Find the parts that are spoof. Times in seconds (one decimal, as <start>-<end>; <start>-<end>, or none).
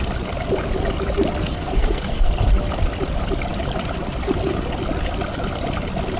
1.4-2.3